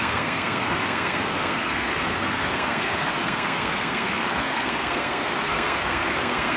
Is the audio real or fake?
fake